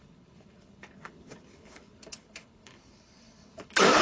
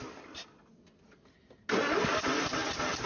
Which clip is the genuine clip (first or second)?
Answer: second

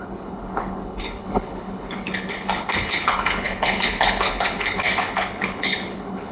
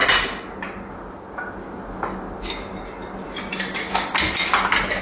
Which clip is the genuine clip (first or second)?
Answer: second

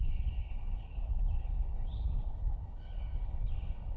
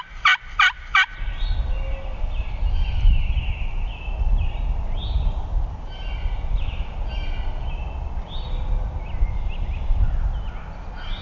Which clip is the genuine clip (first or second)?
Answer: second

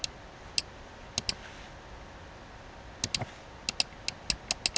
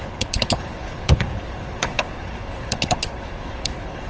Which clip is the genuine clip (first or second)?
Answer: first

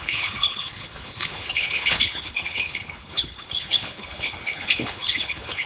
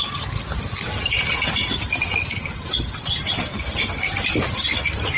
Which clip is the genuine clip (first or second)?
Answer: second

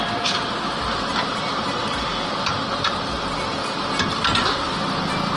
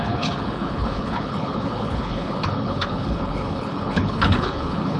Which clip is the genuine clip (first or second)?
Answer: first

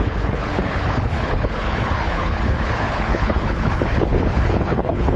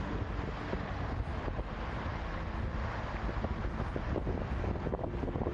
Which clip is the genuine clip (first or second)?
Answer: second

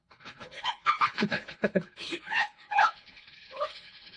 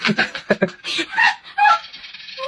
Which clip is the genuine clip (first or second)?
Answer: second